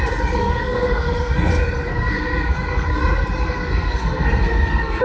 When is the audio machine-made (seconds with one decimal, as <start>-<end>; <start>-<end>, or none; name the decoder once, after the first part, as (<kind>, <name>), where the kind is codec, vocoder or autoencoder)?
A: 0.4-1.5 (codec, SNAC); 1.9-3.0; 3.4-5.0